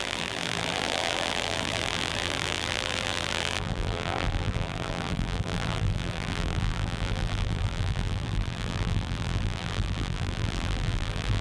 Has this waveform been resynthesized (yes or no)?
yes